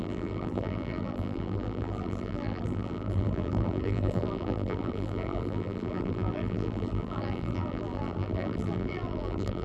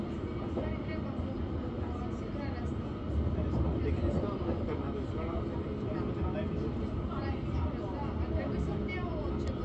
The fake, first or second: first